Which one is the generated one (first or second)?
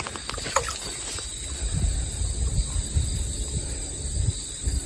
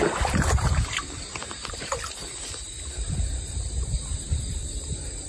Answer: second